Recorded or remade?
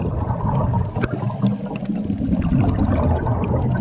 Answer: recorded